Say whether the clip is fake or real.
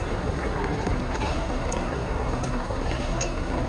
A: fake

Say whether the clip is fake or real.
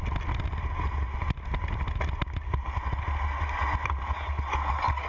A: real